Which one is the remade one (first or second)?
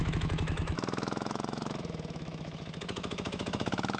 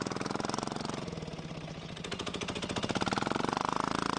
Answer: first